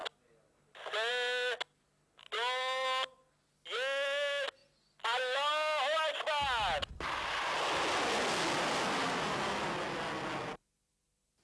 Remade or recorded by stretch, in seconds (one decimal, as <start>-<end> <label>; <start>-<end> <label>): 0.0-11.4 recorded